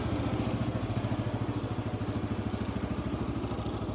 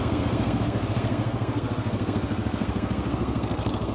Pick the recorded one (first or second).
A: first